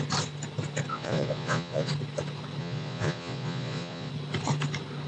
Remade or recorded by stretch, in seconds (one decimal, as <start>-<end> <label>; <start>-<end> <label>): 0.0-0.9 recorded; 0.9-1.9 remade; 1.9-2.6 recorded; 2.6-4.1 remade; 4.1-5.1 recorded